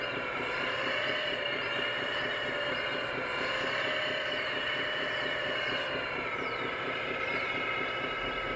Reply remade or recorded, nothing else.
remade